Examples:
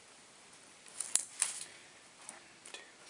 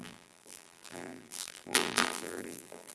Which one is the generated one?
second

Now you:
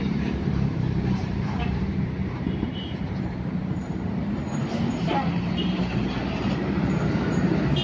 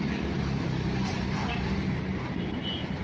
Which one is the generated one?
first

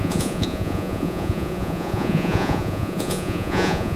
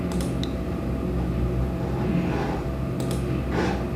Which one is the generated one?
first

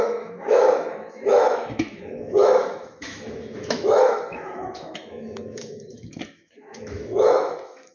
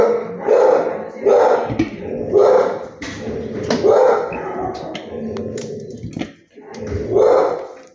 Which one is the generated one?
first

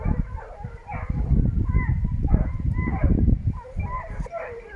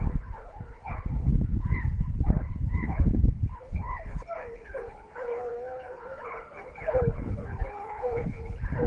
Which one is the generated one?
second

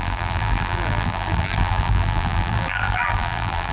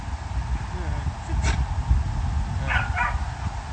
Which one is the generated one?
first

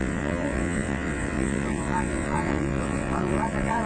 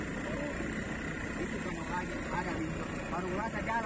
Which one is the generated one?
first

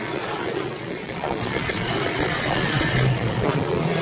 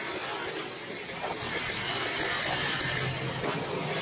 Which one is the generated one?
first